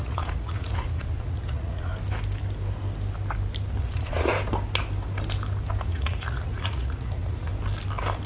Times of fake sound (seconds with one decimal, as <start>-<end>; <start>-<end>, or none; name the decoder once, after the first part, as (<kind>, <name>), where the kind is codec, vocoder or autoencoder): 0.0-1.9 (vocoder, Vocos); 3.8-4.3; 5.9-7.5